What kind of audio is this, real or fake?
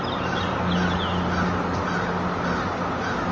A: real